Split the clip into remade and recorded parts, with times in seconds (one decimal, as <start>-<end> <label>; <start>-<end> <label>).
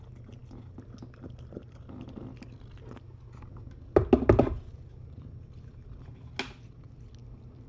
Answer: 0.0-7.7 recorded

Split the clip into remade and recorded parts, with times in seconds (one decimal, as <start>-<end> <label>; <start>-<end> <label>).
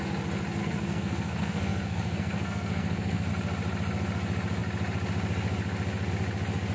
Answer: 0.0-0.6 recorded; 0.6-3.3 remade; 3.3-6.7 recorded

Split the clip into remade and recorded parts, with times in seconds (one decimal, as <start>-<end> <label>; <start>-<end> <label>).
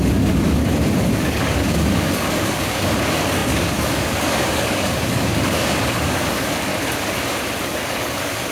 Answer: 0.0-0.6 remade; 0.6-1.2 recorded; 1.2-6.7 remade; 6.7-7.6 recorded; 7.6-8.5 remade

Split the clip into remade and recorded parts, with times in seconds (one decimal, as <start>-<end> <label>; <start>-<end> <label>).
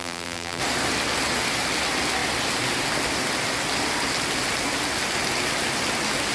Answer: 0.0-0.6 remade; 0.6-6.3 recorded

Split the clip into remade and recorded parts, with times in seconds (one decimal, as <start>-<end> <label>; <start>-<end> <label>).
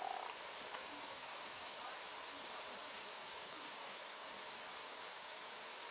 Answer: 0.0-0.7 recorded; 0.7-1.8 remade; 1.8-2.8 recorded; 2.8-4.3 remade; 4.3-4.8 recorded; 4.8-5.9 remade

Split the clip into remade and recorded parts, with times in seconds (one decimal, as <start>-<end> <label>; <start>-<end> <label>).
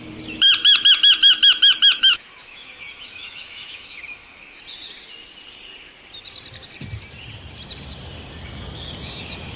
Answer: 0.0-0.6 recorded; 0.6-4.6 remade; 4.6-9.6 recorded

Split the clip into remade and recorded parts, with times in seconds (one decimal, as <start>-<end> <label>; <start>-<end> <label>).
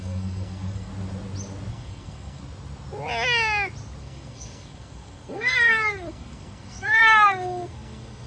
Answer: 0.0-0.9 remade; 0.9-1.7 recorded; 1.7-2.4 remade; 2.4-4.0 recorded; 4.0-8.3 remade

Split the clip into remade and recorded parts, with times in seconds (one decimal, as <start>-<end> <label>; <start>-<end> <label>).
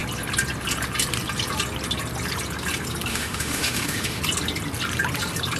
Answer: 0.0-3.1 recorded; 3.1-4.2 remade; 4.2-5.6 recorded